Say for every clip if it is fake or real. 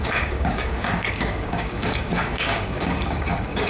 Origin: fake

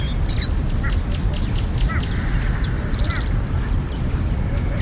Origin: fake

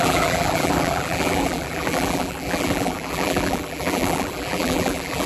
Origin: fake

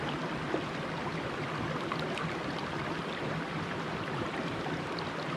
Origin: fake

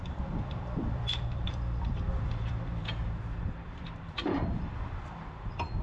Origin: fake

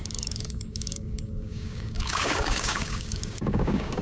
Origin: fake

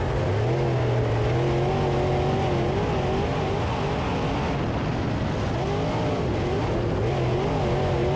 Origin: real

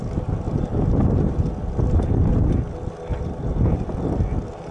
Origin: real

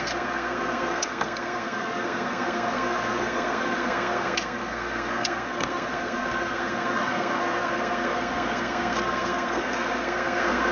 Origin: fake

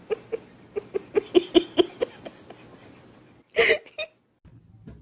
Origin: real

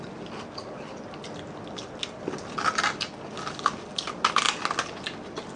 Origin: real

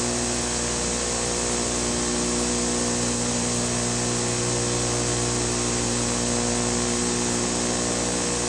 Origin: real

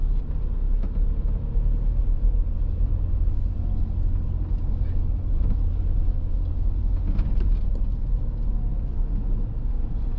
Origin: real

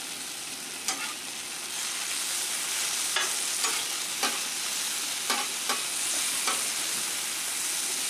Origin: real